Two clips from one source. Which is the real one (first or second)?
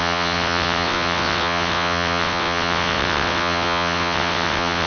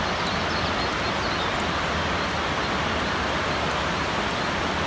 second